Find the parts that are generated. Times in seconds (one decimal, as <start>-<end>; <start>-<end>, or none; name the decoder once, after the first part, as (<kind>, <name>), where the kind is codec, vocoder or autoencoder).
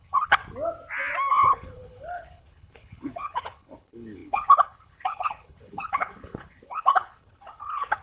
0.0-0.4 (codec, HILCodec); 1.3-8.0